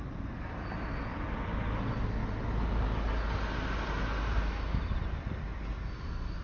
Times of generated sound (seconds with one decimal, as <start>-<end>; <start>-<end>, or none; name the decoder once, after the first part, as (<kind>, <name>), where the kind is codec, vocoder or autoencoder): none